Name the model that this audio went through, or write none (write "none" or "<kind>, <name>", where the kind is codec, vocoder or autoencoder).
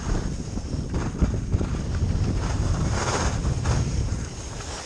none